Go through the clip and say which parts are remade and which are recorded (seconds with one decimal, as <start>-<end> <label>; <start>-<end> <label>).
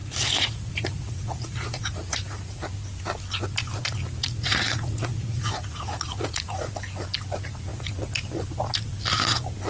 0.0-2.6 remade; 2.6-4.2 recorded; 4.2-6.7 remade; 6.7-9.7 recorded